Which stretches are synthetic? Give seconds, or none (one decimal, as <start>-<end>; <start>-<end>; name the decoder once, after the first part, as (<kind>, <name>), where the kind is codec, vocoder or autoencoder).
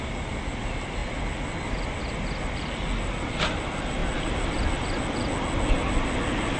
none